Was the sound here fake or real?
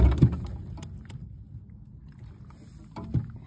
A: real